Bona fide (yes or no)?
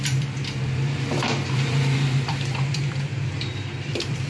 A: no